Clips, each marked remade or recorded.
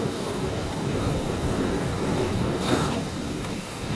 remade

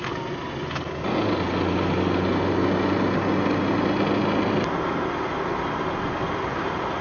recorded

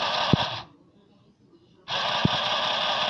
recorded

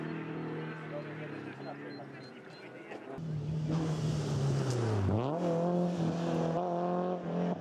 recorded